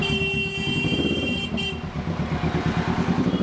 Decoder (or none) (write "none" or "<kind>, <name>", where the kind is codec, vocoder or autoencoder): none